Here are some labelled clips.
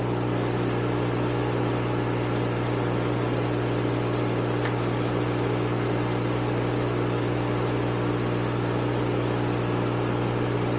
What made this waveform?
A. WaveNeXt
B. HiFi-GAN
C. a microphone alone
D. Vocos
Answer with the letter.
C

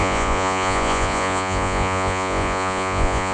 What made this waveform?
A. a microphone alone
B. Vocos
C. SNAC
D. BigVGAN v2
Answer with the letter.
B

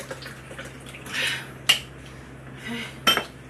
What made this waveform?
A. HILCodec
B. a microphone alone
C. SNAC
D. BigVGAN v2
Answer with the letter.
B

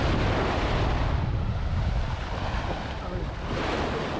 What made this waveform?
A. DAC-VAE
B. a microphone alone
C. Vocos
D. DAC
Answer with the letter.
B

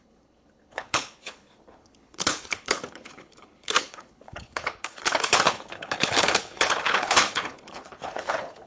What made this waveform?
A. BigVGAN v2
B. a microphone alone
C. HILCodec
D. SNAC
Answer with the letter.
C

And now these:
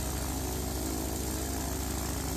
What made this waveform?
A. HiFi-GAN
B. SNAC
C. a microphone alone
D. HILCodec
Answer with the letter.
C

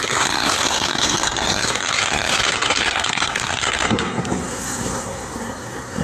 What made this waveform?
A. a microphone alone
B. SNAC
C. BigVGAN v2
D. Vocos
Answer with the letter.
B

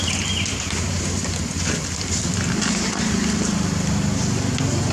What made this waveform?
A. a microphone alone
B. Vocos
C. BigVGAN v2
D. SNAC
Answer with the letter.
A